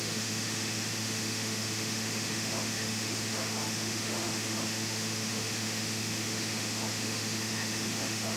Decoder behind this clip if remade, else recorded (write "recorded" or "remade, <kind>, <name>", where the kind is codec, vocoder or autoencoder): remade, autoencoder, DAC-VAE